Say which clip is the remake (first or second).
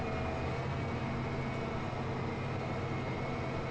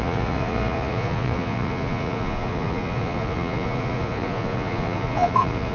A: second